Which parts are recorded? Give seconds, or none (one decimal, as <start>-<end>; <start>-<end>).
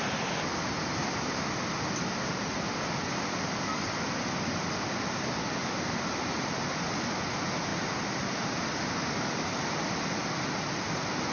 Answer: 0.0-11.3